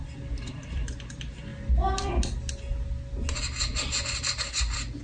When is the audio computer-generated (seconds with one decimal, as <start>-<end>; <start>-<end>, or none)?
0.0-1.5; 4.5-5.0